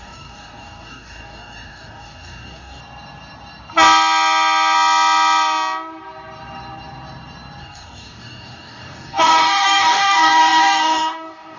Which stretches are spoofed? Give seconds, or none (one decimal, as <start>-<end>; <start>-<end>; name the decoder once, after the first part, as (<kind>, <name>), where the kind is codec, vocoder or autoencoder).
0.0-2.8 (codec, DAC); 7.6-11.6